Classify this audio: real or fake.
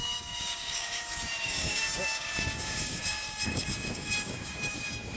fake